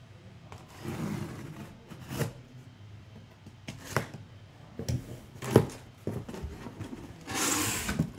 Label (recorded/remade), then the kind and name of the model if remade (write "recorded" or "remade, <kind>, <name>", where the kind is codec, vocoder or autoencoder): recorded